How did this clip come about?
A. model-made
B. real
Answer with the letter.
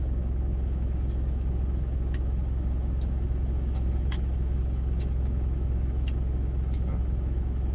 A